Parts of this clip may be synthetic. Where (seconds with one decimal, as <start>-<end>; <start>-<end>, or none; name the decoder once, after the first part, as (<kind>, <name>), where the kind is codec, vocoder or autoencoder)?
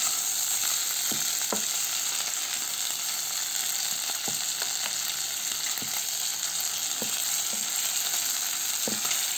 none